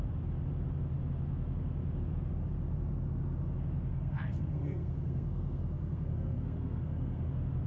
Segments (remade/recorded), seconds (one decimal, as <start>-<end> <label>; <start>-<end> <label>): 0.0-3.9 recorded; 3.9-7.3 remade; 7.3-7.7 recorded